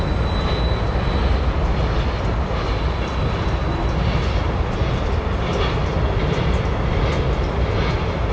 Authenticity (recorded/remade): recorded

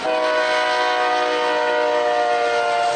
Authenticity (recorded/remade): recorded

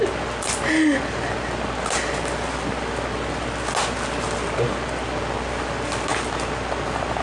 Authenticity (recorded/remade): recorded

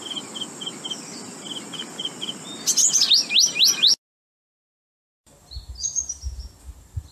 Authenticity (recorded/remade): recorded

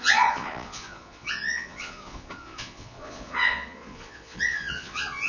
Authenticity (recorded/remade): remade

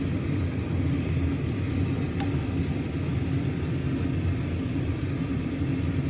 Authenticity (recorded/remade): recorded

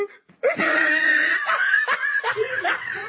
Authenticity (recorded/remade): remade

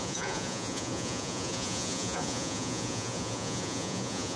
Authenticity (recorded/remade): remade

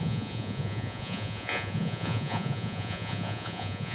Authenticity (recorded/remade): remade